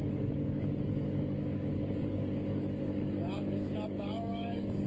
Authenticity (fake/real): fake